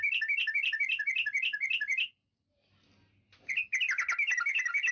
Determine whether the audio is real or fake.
real